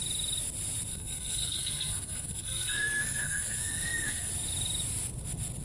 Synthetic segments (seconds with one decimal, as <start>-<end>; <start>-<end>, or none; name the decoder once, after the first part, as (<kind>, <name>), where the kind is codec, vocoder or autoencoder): 0.9-4.3 (codec, SNAC)